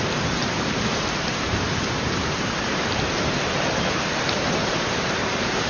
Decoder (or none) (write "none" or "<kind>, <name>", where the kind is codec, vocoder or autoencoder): vocoder, BigVGAN v2